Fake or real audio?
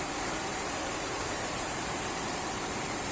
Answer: fake